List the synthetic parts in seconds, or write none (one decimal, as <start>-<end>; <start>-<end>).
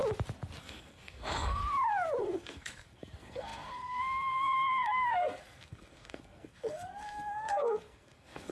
0.6-1.6; 2.2-8.5